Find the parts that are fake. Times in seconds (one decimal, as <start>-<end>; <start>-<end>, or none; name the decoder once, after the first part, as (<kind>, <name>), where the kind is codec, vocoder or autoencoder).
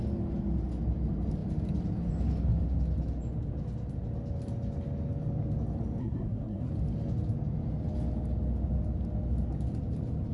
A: 6.0-6.7 (codec, SNAC)